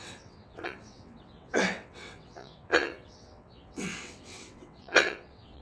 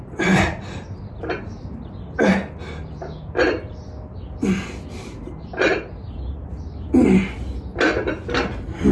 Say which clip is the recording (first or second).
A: second